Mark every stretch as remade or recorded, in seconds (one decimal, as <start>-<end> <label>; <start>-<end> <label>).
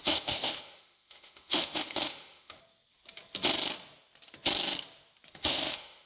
0.0-2.6 remade; 2.6-5.3 recorded; 5.3-6.1 remade